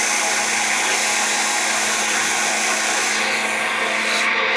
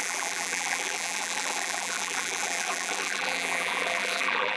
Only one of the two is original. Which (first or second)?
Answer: first